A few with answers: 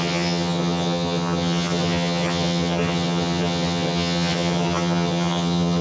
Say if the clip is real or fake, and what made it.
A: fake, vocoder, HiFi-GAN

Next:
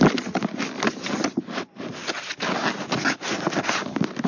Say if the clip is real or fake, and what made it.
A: real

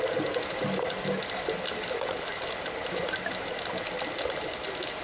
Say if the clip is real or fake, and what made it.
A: real